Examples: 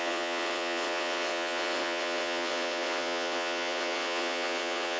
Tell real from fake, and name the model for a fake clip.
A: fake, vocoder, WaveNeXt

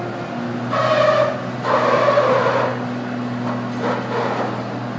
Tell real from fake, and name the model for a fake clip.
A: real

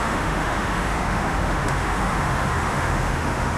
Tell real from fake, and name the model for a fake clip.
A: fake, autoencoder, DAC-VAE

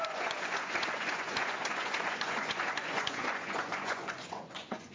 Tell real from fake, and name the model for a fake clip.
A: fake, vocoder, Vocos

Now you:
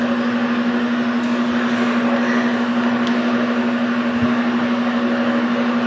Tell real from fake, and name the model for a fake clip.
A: real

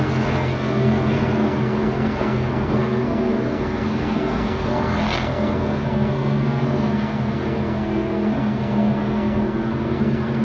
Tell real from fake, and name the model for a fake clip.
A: fake, codec, SNAC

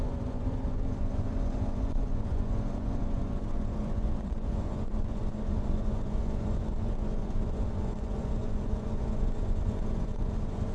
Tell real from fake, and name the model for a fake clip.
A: fake, vocoder, Vocos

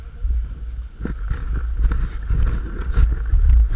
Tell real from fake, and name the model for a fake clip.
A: real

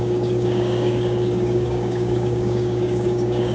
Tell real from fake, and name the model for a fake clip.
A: fake, codec, DAC